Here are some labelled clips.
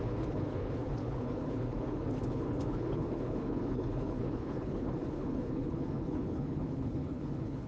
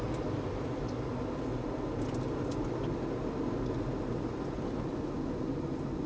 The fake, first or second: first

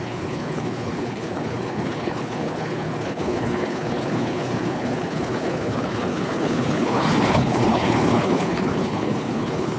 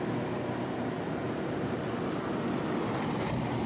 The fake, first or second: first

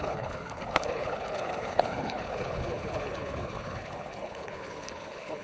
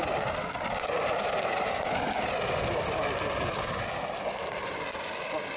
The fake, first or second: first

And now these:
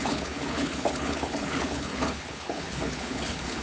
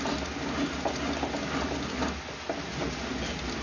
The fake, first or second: first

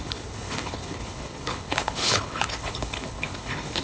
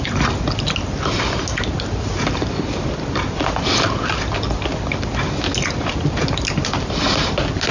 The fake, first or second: first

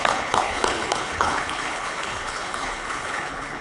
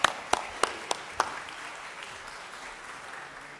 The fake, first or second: first